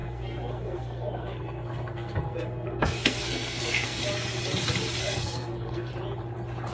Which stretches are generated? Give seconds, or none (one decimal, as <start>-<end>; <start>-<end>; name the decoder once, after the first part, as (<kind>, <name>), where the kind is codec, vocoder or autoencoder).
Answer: 0.0-4.0 (codec, SNAC); 5.0-5.9

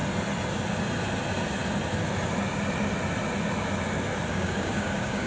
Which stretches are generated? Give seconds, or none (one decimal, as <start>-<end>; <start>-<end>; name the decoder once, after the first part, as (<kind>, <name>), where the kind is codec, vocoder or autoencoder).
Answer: 4.3-5.3 (codec, DAC)

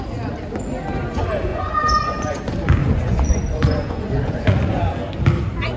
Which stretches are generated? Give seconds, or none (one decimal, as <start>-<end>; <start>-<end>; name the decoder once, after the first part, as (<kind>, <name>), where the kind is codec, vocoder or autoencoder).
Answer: 1.5-2.4 (vocoder, Vocos); 2.8-4.8

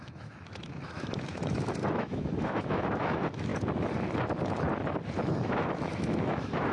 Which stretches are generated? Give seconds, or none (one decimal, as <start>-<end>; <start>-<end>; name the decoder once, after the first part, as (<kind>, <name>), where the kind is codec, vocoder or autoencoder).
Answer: 0.0-3.5 (autoencoder, DAC-VAE); 5.4-6.7

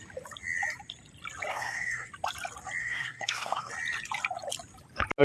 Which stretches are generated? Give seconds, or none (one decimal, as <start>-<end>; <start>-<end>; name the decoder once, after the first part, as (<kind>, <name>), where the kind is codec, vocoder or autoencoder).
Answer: 1.5-2.1 (codec, SNAC); 2.8-3.7

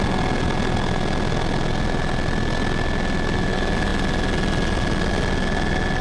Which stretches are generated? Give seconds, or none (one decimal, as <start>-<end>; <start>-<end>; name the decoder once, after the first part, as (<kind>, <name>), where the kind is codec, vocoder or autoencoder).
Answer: none